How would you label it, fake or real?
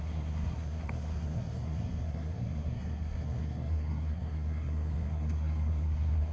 fake